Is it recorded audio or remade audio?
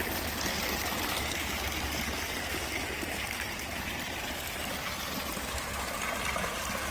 recorded